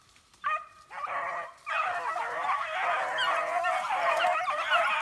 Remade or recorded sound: recorded